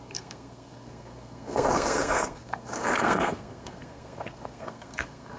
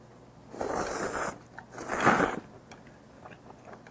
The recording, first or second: second